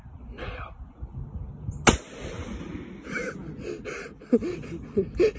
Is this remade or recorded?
recorded